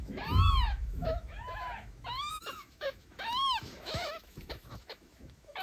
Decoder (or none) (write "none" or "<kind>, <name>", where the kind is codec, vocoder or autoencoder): autoencoder, DAC-VAE